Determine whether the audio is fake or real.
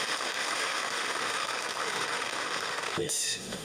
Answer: fake